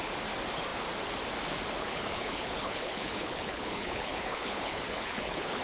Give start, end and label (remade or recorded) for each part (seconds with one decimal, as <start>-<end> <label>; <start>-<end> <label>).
0.0-1.8 recorded; 1.8-5.6 remade